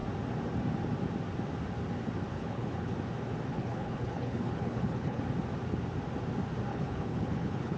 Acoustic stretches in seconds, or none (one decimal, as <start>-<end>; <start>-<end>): 0.0-2.3; 2.9-3.5; 5.2-6.7